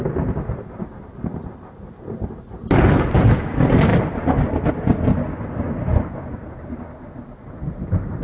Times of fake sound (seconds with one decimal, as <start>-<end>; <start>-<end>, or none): none